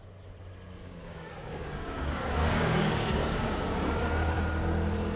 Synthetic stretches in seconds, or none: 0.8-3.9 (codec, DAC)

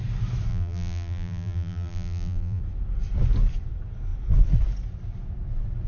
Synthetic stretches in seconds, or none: 0.5-2.6 (vocoder, BigVGAN v2)

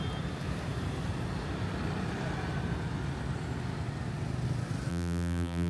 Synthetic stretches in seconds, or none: 4.9-5.7 (vocoder, BigVGAN v2)

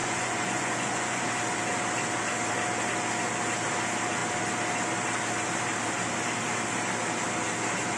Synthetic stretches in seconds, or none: 0.0-1.2 (vocoder, Vocos)

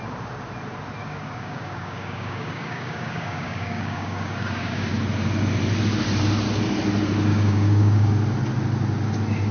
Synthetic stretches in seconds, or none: 1.0-4.9 (codec, DAC); 7.3-8.1

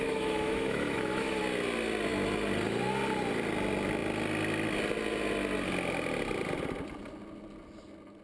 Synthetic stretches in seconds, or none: 0.0-1.4 (autoencoder, DAC-VAE)